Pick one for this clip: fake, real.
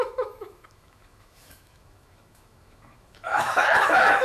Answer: fake